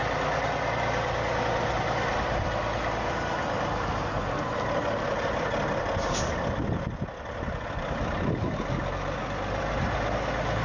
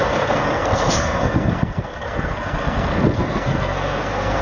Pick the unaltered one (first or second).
first